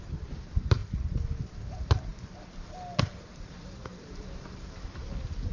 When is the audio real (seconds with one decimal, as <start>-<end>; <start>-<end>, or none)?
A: 0.8-1.5; 2.1-3.0